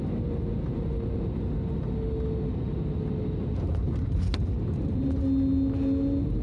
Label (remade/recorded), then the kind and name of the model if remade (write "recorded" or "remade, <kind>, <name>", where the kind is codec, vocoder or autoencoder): recorded